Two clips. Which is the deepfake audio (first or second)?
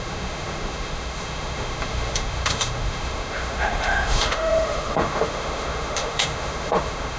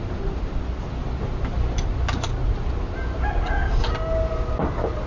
first